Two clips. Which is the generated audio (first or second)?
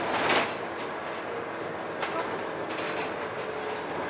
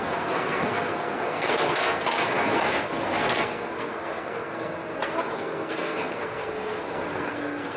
second